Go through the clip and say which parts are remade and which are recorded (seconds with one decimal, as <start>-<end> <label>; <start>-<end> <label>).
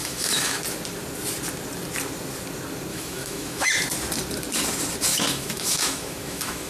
0.0-0.6 remade; 0.6-2.9 recorded; 2.9-3.7 remade; 3.7-5.1 recorded; 5.1-6.7 remade